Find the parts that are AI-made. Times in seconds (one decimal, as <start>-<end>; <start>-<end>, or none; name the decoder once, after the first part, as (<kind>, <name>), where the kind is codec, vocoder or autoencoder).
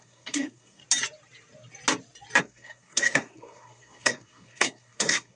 0.0-0.8 (codec, SNAC); 2.4-5.4